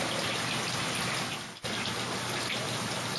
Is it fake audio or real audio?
real